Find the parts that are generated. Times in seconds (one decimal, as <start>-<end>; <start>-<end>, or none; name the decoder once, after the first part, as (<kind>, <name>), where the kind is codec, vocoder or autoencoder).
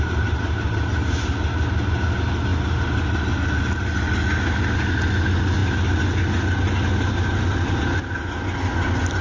none